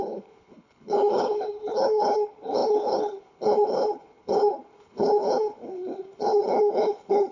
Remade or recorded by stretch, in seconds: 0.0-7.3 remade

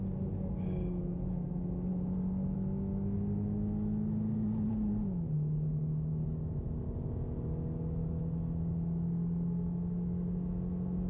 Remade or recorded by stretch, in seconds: 0.0-11.1 recorded

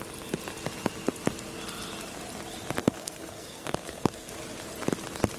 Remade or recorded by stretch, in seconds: 0.0-2.8 recorded; 2.8-4.3 remade; 4.3-5.4 recorded